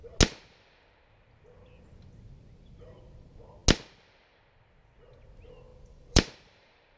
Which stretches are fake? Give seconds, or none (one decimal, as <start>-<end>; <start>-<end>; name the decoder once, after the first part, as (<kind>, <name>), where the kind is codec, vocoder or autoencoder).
5.7-7.0 (vocoder, BigVGAN v2)